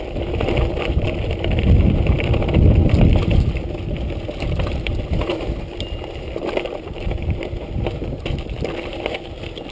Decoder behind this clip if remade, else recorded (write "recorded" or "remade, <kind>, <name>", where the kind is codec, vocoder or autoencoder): remade, vocoder, BigVGAN v2